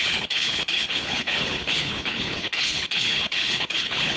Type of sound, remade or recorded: remade